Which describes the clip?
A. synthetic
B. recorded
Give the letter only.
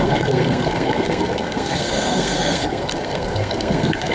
A